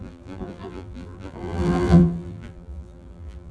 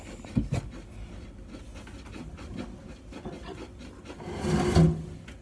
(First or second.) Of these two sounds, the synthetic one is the first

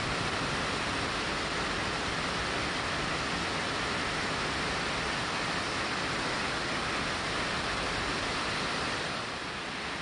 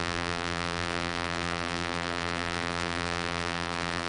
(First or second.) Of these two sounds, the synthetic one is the second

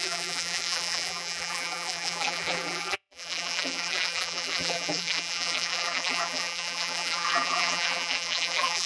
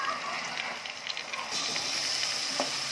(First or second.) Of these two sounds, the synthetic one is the first